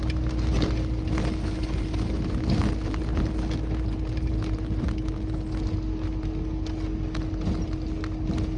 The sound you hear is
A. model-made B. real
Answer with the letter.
B